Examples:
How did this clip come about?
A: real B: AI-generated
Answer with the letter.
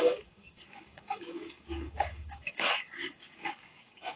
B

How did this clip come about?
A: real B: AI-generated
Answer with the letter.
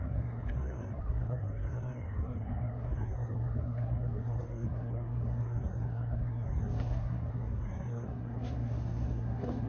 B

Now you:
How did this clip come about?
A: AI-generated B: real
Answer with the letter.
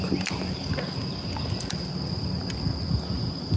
B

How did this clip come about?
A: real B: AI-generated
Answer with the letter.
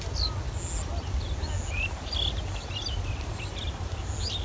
A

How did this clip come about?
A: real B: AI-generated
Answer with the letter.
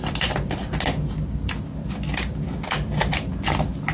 A